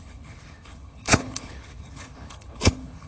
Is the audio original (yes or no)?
no